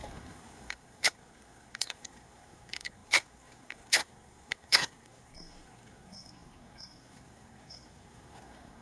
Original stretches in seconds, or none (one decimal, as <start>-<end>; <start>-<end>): none